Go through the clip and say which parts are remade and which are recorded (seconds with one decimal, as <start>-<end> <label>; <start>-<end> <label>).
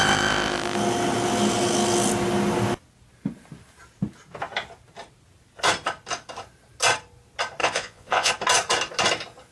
0.0-7.6 recorded; 7.6-8.3 remade; 8.3-9.5 recorded